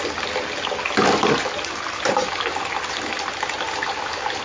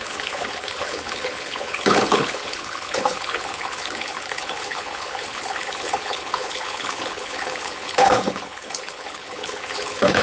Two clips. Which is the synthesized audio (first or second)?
second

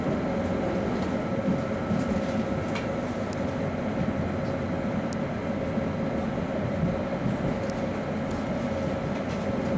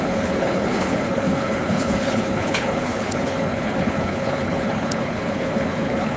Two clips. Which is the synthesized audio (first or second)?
second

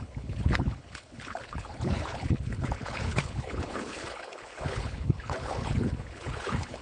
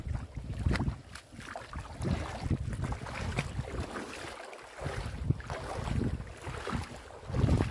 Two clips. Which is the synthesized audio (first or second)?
first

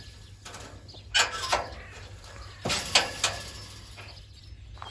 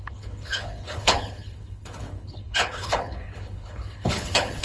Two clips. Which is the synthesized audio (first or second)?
second